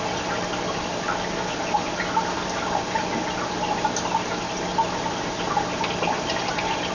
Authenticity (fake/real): real